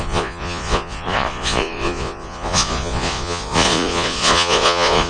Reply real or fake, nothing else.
fake